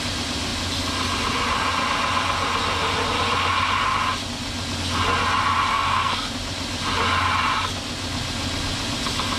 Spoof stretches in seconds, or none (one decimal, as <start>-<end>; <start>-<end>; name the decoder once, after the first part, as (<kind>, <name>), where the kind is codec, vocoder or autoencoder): 5.7-6.3 (codec, SNAC)